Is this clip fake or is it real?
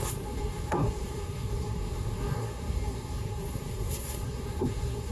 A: fake